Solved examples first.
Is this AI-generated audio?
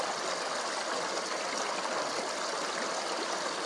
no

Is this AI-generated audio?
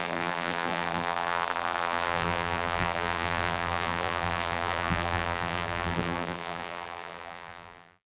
yes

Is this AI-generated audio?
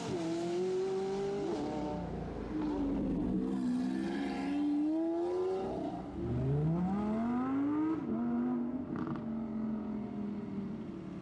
no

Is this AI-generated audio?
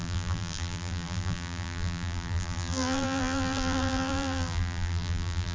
yes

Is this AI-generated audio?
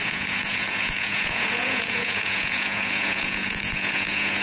yes